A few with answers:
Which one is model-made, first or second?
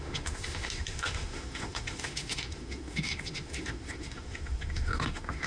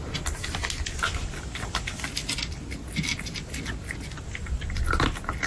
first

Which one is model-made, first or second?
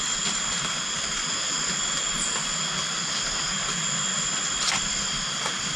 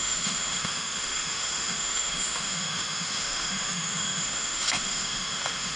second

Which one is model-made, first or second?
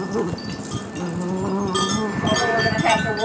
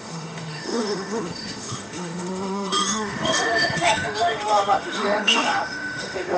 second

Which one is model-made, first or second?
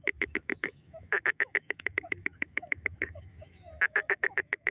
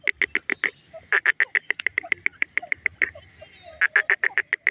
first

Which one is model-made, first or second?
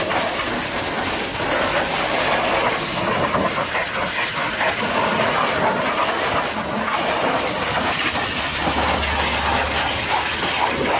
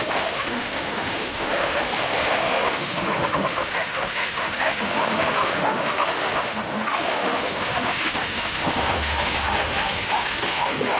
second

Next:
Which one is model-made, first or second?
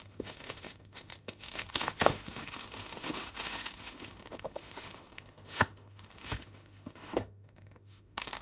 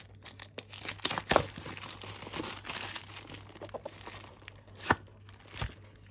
first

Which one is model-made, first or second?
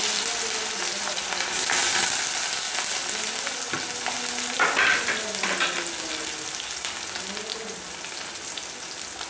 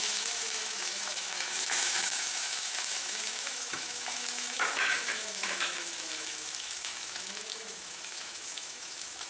second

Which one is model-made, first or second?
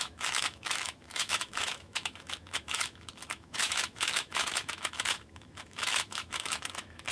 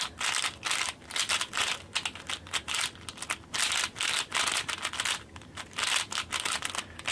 first